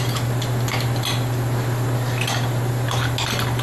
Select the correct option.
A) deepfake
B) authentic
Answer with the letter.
B